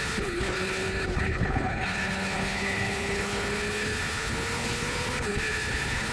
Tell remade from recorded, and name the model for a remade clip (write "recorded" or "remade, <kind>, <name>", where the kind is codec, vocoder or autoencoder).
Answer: remade, codec, HILCodec